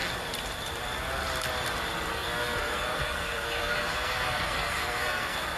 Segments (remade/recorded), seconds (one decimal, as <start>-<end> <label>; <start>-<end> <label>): 0.0-2.1 recorded; 2.1-5.6 remade